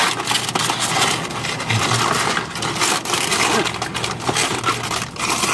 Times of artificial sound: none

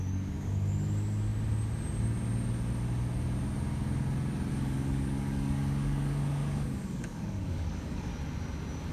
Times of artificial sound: 0.0-1.3 (codec, DAC); 4.5-8.1

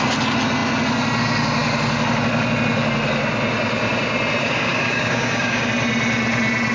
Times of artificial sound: 4.4-5.7 (codec, DAC)